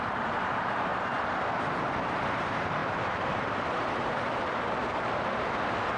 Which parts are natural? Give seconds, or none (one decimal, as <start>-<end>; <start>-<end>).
0.9-1.5